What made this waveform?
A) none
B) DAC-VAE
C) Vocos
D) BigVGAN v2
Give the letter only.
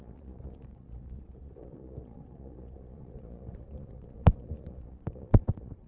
C